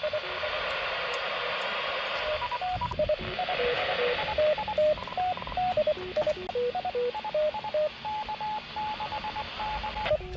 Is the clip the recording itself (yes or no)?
yes